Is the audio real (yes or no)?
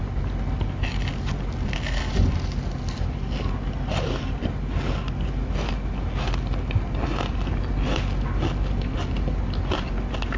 yes